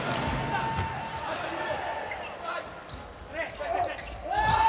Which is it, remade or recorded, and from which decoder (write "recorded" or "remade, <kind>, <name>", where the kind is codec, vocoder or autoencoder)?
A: recorded